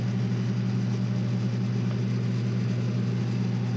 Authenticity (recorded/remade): recorded